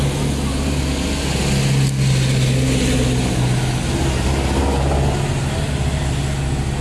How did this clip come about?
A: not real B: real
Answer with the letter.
B